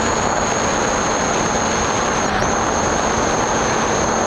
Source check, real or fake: real